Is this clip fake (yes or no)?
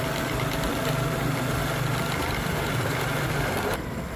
no